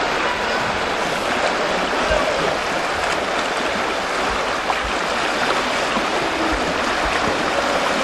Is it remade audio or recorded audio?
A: recorded